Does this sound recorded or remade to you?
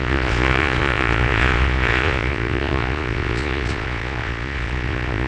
remade